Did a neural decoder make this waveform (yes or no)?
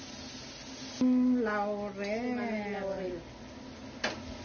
no